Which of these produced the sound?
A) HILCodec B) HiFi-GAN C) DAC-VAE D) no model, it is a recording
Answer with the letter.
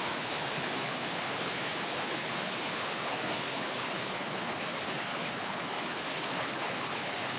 A